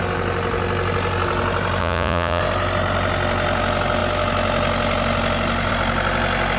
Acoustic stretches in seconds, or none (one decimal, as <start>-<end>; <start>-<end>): 0.0-1.8; 2.4-6.6